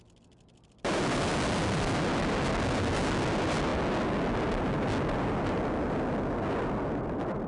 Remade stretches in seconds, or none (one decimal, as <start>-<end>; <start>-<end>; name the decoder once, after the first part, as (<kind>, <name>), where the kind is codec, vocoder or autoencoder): none